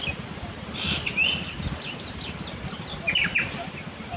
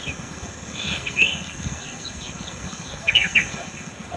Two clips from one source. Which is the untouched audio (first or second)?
first